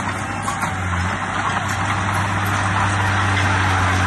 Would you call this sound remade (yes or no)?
no